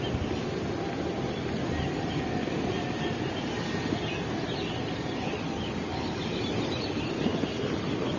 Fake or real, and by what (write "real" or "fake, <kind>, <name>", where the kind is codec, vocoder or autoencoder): real